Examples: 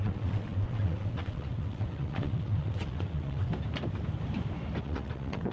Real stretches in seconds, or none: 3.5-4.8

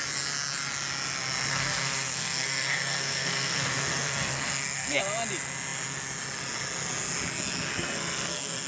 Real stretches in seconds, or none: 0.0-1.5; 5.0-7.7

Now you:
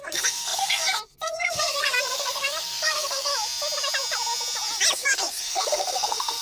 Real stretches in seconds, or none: 3.3-4.9

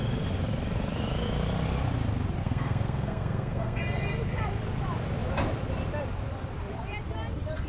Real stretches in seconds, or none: 0.0-2.4; 3.8-7.7

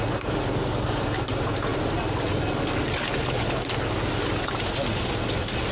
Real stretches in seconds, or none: 0.0-5.7